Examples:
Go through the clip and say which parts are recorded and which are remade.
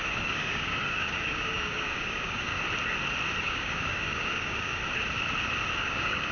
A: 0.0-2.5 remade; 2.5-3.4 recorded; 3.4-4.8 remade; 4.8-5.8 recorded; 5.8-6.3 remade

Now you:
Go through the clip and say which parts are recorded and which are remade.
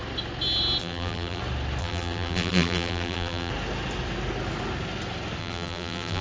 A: 0.0-0.8 recorded; 0.8-1.4 remade; 1.4-1.8 recorded; 1.8-3.5 remade; 3.5-5.4 recorded; 5.4-6.2 remade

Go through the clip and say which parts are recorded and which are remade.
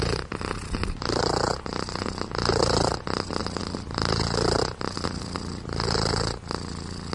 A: 0.0-7.1 recorded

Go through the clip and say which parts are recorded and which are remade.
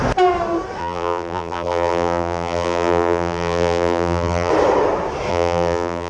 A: 0.0-0.8 recorded; 0.8-4.5 remade; 4.5-5.3 recorded; 5.3-6.1 remade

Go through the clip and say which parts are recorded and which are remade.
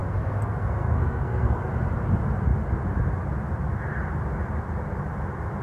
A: 0.0-1.6 remade; 1.6-5.6 recorded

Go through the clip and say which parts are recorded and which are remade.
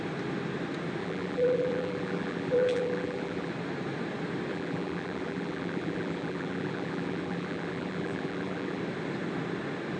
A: 0.0-1.0 recorded; 1.0-3.5 remade; 3.5-4.5 recorded; 4.5-8.8 remade; 8.8-10.0 recorded